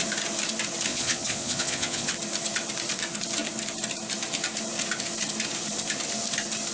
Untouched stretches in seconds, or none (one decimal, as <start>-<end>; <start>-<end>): 0.0-0.9; 2.1-6.7